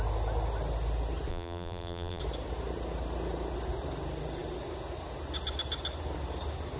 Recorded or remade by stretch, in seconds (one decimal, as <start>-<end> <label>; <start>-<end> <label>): 0.0-1.3 recorded; 1.3-2.2 remade; 2.2-6.8 recorded